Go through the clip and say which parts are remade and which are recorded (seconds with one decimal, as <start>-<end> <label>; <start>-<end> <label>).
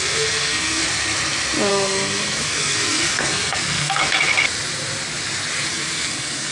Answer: 0.0-0.8 remade; 0.8-1.7 recorded; 1.7-4.0 remade; 4.0-5.7 recorded; 5.7-6.5 remade